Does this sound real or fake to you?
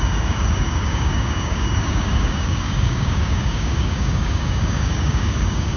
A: fake